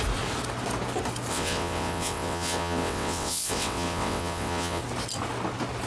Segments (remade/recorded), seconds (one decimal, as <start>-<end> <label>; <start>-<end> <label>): 0.0-1.3 recorded; 1.3-4.8 remade; 4.8-5.9 recorded